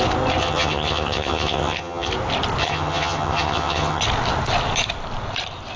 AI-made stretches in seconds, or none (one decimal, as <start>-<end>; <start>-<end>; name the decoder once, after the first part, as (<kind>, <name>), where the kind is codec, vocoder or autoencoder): 0.4-2.1 (vocoder, HiFi-GAN); 2.6-4.0